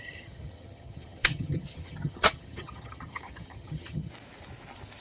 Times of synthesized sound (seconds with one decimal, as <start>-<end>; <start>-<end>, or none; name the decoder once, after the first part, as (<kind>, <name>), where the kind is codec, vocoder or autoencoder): 0.0-4.1 (vocoder, HiFi-GAN)